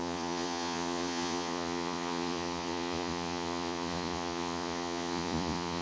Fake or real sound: fake